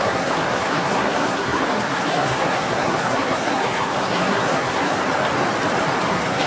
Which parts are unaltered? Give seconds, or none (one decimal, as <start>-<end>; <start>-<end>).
5.0-6.1